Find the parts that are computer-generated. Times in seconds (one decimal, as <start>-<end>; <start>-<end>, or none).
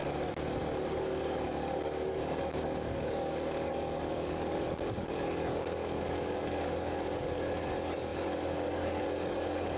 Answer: 0.9-9.8